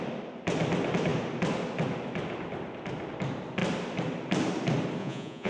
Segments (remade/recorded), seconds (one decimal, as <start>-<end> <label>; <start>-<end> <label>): 0.0-5.0 recorded; 5.0-5.5 remade